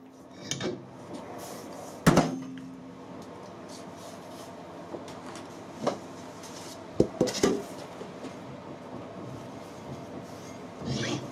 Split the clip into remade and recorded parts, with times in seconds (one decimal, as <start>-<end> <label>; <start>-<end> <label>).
0.0-11.3 recorded